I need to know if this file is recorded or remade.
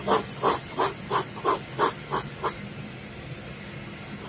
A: recorded